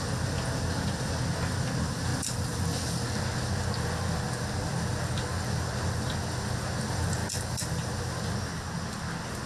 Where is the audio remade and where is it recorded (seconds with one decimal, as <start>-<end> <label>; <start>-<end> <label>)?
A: 0.0-9.5 recorded